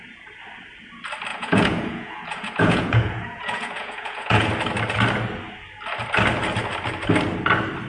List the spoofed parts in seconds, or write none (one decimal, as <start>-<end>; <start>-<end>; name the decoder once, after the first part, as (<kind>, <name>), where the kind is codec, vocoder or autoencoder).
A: 1.3-4.5 (vocoder, Vocos)